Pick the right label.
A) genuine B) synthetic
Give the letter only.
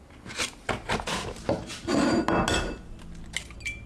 A